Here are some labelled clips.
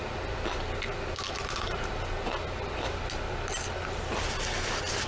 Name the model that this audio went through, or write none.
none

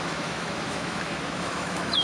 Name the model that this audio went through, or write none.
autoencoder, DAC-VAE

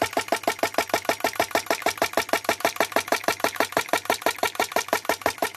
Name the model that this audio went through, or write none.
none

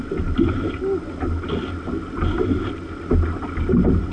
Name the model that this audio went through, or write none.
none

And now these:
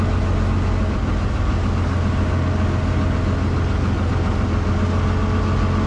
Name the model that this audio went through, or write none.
none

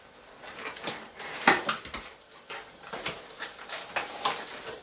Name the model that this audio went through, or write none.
none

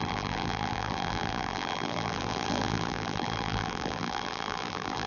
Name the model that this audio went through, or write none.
vocoder, BigVGAN v2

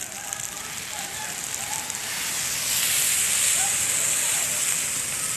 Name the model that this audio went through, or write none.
none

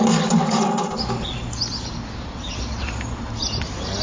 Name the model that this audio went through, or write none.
none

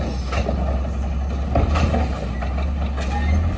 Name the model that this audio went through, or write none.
none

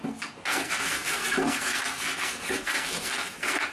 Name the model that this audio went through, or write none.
codec, SNAC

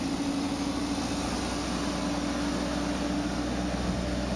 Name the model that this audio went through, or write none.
none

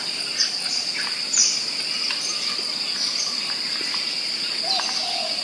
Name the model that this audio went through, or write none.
none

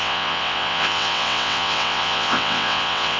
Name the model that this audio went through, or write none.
vocoder, WaveNeXt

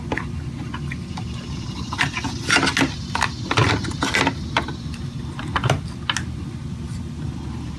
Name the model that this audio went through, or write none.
none